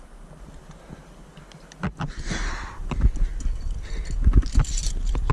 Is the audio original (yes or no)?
yes